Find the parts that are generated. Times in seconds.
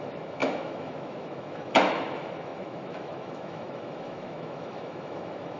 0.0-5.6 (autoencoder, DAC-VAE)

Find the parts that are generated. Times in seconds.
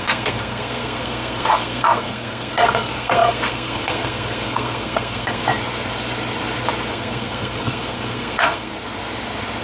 0.0-5.4 (codec, SNAC); 6.9-8.7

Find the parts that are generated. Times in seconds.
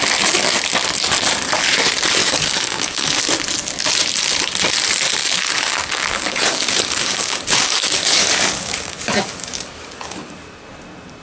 2.2-3.2 (codec, DAC); 5.2-10.3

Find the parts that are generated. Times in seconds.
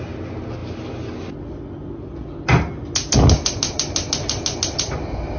none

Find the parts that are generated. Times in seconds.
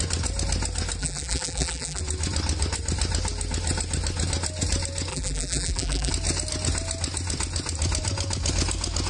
1.0-2.0 (vocoder, BigVGAN v2); 5.1-6.1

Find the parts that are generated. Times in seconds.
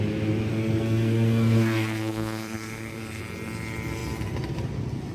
0.5-3.2 (codec, SNAC)